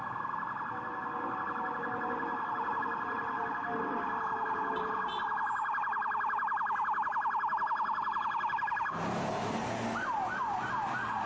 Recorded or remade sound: recorded